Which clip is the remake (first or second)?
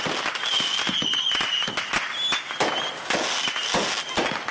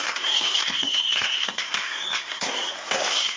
second